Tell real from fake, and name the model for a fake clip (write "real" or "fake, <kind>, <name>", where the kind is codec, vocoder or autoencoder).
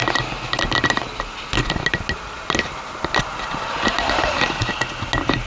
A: real